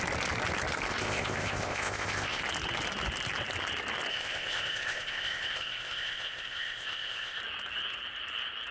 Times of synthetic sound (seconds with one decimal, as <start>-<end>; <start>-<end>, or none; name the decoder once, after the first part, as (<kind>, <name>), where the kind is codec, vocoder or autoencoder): 0.9-2.4 (codec, ZipCodec); 4.1-7.4